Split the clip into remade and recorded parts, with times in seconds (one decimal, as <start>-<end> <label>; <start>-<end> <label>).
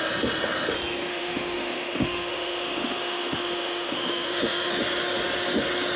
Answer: 0.0-1.1 recorded; 1.1-4.7 remade; 4.7-6.0 recorded